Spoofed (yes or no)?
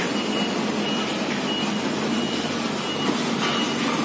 no